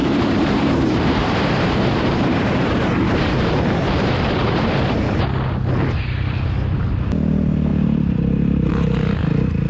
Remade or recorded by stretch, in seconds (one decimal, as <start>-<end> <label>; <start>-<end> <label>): 0.0-5.2 remade; 5.2-7.7 recorded; 7.7-8.7 remade; 8.7-9.7 recorded